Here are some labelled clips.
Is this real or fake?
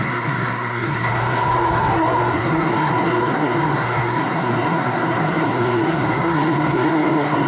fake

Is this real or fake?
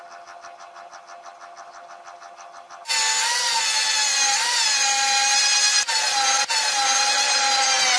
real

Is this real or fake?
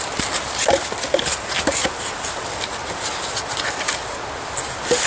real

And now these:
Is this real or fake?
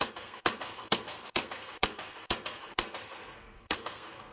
fake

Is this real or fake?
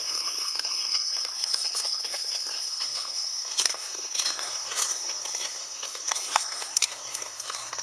fake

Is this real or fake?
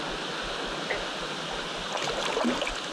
real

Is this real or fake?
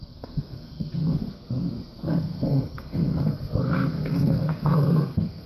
fake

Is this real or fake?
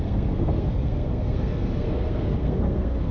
fake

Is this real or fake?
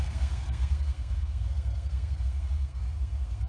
fake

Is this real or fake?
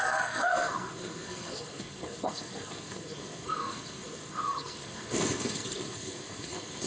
fake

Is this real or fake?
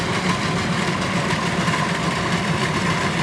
real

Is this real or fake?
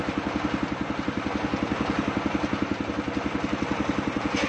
real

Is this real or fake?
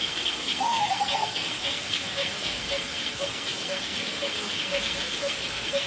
fake